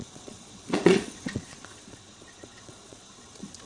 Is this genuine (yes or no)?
no